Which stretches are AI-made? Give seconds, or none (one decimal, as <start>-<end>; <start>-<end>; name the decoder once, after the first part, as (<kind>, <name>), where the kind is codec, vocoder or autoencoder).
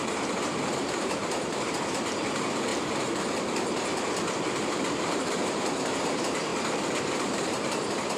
0.0-2.7 (vocoder, BigVGAN v2); 4.7-6.5; 7.0-8.2